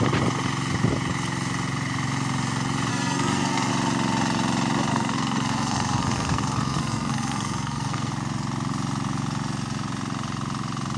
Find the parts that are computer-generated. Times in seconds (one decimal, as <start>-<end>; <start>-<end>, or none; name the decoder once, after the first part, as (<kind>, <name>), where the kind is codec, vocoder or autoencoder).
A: 2.9-3.7 (codec, SNAC); 4.9-8.1